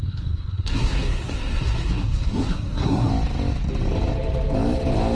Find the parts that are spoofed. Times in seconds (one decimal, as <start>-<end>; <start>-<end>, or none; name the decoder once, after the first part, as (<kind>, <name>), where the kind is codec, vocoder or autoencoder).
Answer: 0.0-3.1 (codec, SNAC)